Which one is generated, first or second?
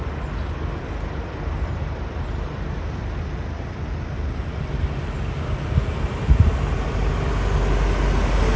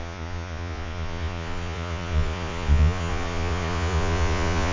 second